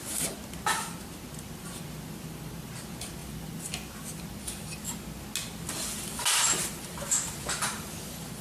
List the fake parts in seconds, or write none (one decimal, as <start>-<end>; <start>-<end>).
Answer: 3.2-4.2